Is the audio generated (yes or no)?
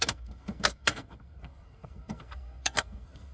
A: yes